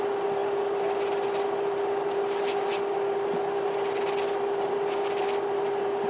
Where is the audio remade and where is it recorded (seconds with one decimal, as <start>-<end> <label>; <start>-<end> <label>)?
0.0-6.1 recorded